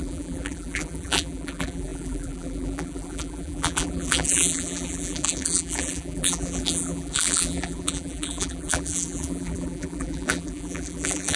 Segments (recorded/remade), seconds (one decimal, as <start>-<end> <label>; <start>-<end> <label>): 0.0-11.4 remade